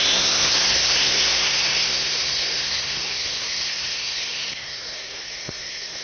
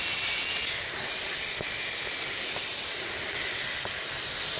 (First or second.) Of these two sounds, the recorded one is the second